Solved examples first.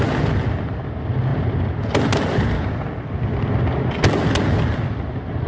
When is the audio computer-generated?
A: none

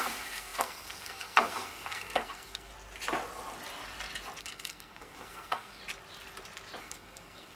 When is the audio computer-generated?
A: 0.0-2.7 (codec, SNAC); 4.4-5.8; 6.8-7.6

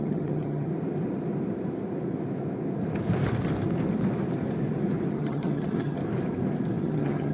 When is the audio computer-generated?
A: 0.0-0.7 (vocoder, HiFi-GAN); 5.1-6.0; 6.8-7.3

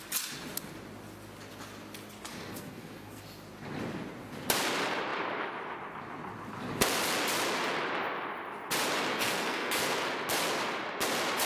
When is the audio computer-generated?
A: 2.3-3.2 (codec, SNAC); 9.1-10.1